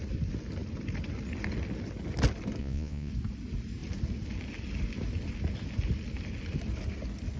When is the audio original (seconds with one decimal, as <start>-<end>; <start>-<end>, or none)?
0.0-2.6; 3.1-7.4